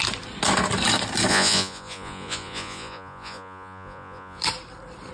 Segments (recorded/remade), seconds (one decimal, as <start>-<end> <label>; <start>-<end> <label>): 0.0-1.3 recorded; 1.3-4.4 remade; 4.4-5.1 recorded